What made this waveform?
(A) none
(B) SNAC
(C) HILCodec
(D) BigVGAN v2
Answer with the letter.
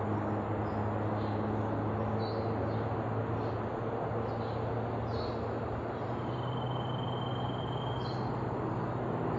A